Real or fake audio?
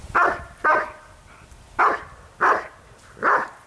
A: real